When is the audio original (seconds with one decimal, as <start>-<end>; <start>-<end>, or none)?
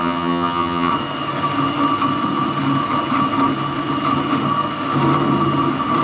0.9-6.0